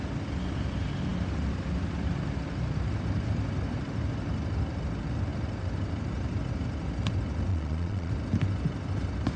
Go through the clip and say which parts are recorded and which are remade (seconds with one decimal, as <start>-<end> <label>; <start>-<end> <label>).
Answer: 0.0-7.5 recorded; 7.5-8.1 remade; 8.1-9.4 recorded